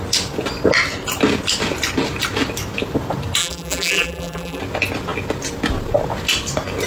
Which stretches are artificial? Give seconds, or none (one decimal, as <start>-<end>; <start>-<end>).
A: 3.4-4.6